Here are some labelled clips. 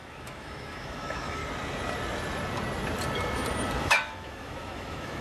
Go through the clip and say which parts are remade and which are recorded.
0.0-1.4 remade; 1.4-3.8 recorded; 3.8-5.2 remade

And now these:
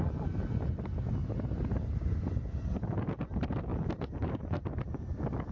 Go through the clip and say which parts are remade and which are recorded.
0.0-3.7 recorded; 3.7-4.7 remade; 4.7-5.5 recorded

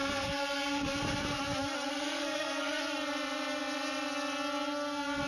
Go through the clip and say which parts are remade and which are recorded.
0.0-0.9 remade; 0.9-1.9 recorded; 1.9-2.8 remade; 2.8-5.3 recorded

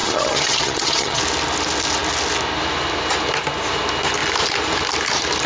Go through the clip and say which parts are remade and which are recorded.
0.0-1.2 remade; 1.2-5.5 recorded